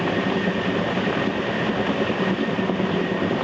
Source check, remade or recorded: recorded